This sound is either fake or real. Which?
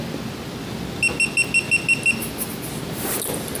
real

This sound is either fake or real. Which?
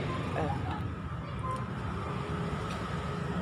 real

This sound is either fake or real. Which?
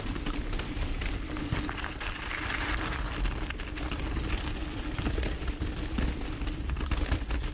real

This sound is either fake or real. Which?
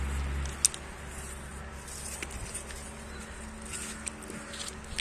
real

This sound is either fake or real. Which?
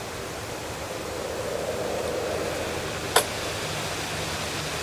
real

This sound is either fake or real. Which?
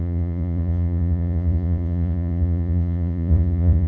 fake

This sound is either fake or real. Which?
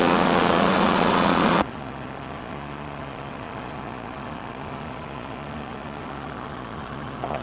fake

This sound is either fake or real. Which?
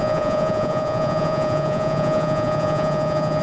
fake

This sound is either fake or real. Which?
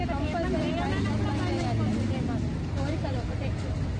real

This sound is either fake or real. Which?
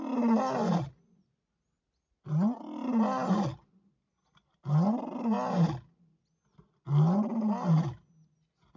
real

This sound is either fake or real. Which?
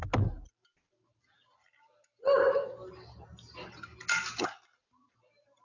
real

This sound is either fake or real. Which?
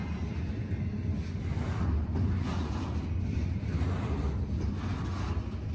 real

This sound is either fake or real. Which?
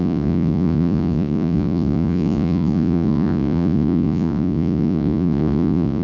fake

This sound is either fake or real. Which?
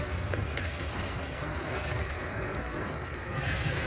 fake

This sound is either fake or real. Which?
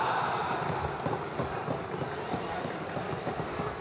real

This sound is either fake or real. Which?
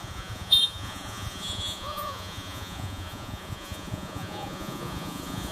fake